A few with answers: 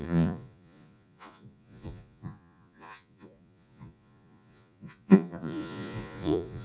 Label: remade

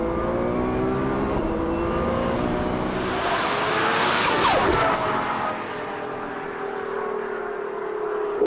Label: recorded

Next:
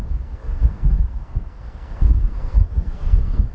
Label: remade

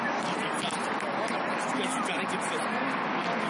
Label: recorded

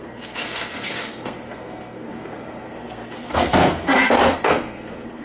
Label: remade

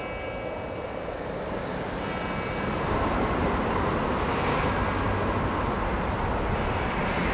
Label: recorded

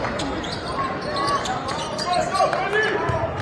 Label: remade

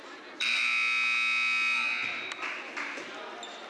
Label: recorded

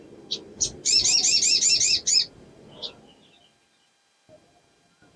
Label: recorded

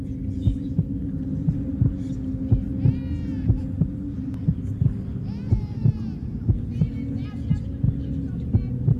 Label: recorded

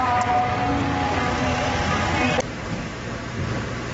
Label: recorded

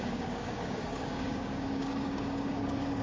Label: remade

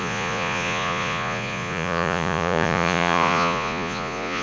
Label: remade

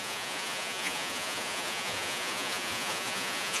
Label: remade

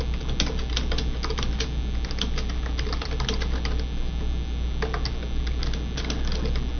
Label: recorded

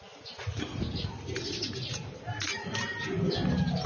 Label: recorded